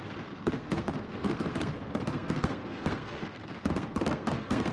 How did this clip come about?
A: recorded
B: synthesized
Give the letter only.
B